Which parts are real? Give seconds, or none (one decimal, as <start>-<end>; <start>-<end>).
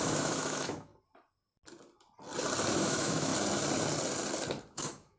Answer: 0.9-2.7; 3.3-4.7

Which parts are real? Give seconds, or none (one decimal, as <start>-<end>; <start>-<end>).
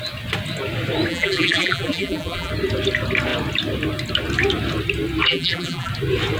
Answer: 0.0-1.1; 2.5-5.3; 5.9-6.4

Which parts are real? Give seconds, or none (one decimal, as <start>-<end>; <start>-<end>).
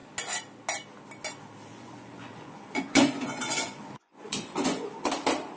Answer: 0.0-1.7; 5.1-5.6